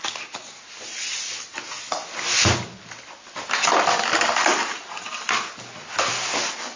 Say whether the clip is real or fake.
real